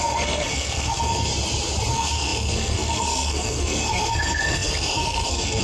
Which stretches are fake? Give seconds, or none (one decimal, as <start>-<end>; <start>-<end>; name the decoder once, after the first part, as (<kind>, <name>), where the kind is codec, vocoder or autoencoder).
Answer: 0.0-1.3 (codec, SNAC); 1.9-5.6